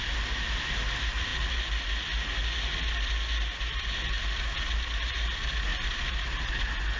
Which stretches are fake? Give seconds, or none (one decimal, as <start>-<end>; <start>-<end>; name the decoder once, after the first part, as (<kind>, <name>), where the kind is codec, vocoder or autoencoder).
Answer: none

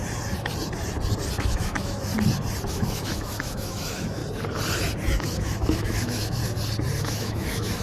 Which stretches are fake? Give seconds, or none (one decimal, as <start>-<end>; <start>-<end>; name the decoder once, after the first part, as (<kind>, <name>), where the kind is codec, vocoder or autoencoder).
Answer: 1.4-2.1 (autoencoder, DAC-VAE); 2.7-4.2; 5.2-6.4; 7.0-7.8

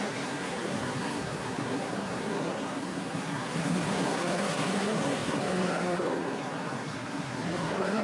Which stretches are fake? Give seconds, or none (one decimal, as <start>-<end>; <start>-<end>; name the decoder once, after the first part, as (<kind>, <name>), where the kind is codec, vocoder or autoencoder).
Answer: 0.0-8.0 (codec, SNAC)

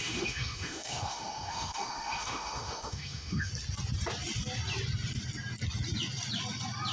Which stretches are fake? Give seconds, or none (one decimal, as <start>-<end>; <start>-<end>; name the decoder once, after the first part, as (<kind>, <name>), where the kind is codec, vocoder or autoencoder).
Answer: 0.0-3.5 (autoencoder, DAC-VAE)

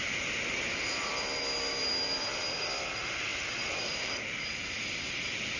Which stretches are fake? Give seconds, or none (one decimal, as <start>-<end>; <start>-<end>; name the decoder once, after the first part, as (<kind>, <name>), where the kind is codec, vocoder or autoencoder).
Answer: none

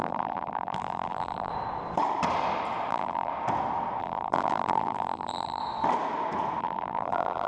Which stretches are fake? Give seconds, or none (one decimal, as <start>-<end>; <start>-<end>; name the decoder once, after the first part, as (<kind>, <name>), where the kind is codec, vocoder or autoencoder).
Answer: 0.0-1.5 (vocoder, BigVGAN v2); 2.9-3.3; 4.0-5.6; 6.6-7.5

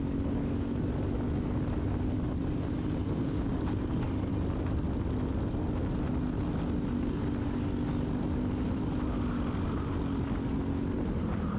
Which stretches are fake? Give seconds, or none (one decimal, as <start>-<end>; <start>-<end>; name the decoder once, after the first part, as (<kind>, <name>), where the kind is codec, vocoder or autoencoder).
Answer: 3.0-3.8 (codec, DAC)

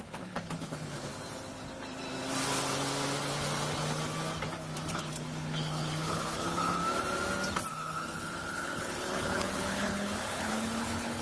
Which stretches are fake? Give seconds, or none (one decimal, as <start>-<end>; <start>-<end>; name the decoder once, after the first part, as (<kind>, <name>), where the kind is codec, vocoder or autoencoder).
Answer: 0.0-1.1 (codec, HILCodec); 4.9-6.8; 7.7-11.2